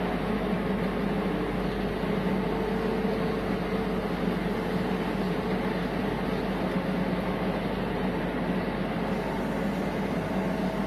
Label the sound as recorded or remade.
recorded